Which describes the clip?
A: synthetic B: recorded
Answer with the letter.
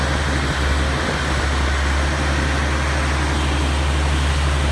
B